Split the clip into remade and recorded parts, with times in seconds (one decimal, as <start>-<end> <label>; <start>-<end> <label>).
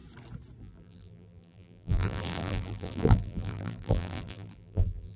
0.0-0.6 recorded; 0.6-5.2 remade